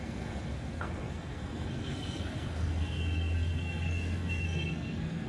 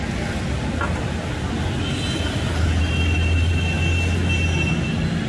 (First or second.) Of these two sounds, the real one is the second